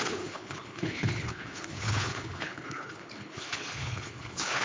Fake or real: fake